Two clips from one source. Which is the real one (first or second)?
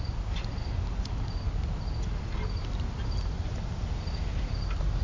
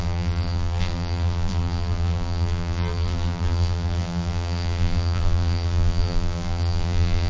first